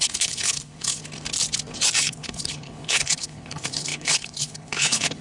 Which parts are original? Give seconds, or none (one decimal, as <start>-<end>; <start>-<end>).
1.0-2.1